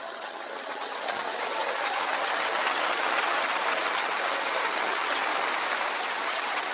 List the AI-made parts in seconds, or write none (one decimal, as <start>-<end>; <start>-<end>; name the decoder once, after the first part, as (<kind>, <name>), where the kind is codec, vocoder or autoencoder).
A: 0.0-5.3 (vocoder, HiFi-GAN); 6.0-6.7